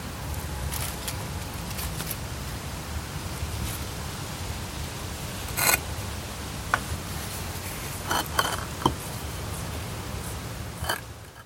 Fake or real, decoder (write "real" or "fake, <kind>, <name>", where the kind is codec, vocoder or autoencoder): real